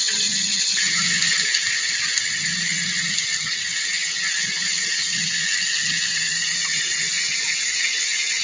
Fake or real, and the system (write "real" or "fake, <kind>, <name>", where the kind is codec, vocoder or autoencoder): real